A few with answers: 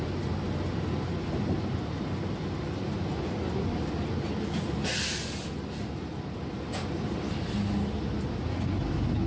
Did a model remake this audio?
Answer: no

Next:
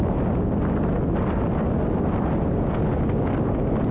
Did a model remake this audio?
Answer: no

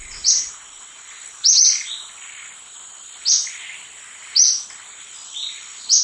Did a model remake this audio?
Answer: no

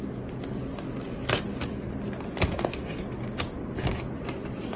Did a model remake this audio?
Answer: no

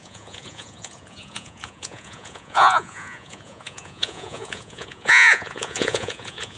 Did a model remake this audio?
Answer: yes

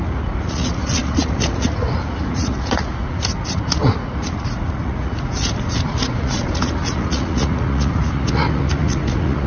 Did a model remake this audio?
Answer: yes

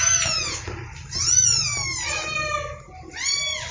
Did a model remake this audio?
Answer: no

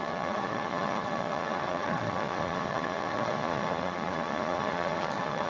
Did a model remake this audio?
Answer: yes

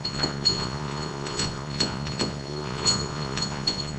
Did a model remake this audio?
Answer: yes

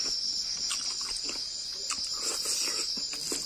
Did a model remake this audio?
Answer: no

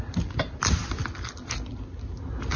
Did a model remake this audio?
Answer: no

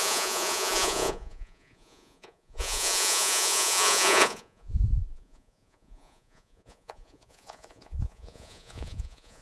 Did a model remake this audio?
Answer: yes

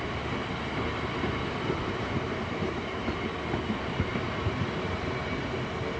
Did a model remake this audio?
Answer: no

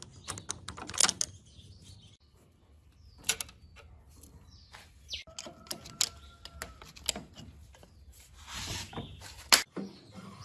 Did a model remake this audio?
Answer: no